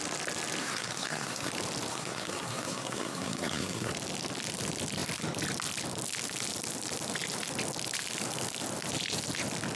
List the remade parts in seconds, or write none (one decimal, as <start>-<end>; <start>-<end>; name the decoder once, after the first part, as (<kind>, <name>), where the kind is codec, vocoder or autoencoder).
0.6-1.5 (codec, SNAC); 1.9-3.9